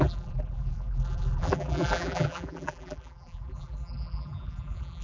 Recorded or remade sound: remade